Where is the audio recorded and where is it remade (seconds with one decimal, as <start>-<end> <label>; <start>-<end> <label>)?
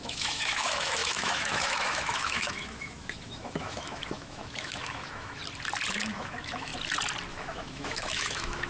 0.0-5.4 remade; 5.4-5.9 recorded; 5.9-6.7 remade; 6.7-7.3 recorded; 7.3-8.7 remade